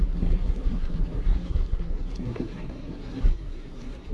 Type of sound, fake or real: fake